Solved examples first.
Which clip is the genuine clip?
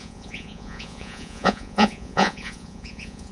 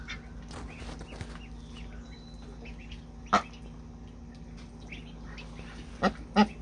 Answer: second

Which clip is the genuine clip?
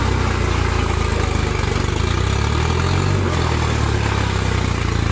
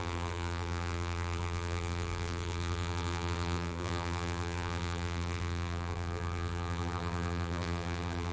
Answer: first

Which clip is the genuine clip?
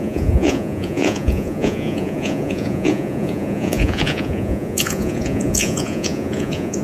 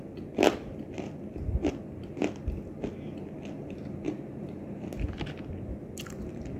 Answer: second